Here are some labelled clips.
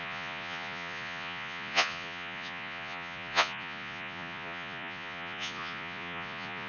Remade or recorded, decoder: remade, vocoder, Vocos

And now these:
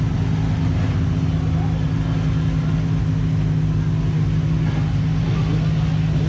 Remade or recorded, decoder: recorded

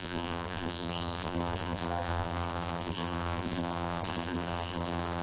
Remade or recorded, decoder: remade, vocoder, BigVGAN v2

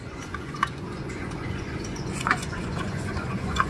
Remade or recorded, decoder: remade, vocoder, Vocos